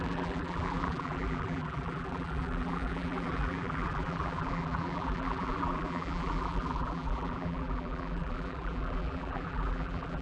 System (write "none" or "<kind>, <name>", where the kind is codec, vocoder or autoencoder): vocoder, BigVGAN v2